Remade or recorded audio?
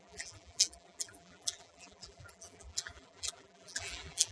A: remade